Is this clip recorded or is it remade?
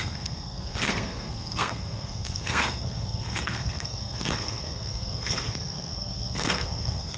remade